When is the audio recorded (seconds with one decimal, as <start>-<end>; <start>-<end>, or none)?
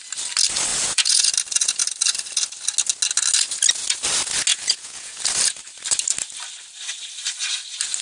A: 0.0-0.7; 1.3-4.5; 5.2-8.0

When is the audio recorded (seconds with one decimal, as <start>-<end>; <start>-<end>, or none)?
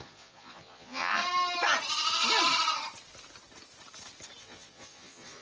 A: 1.2-4.4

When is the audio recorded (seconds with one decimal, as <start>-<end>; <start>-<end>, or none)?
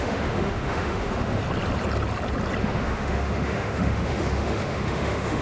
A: 1.4-2.6